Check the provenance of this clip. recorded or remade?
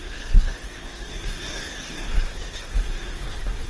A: remade